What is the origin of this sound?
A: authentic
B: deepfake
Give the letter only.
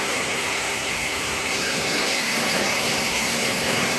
B